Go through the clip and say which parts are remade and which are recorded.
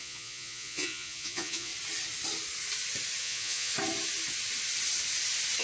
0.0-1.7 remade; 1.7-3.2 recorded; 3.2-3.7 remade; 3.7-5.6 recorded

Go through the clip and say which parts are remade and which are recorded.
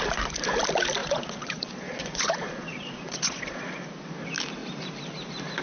0.0-1.0 recorded; 1.0-3.7 remade; 3.7-5.6 recorded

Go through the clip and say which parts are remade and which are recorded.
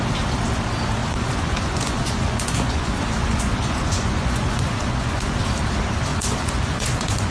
0.0-1.0 recorded; 1.0-5.4 remade; 5.4-6.1 recorded; 6.1-7.3 remade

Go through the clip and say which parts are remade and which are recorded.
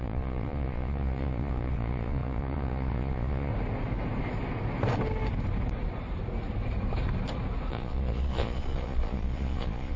0.0-3.5 remade; 3.5-7.7 recorded; 7.7-10.0 remade